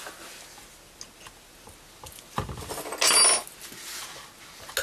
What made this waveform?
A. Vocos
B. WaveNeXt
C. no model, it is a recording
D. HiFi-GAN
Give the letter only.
C